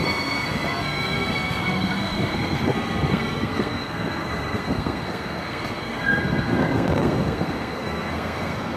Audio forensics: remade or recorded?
remade